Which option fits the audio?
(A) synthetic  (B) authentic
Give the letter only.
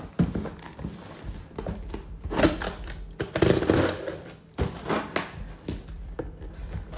B